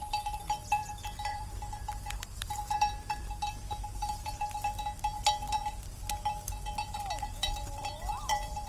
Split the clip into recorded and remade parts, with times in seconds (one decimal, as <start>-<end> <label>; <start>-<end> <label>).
0.0-4.8 remade; 4.8-7.2 recorded; 7.2-8.7 remade